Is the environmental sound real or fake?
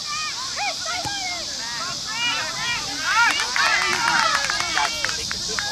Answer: real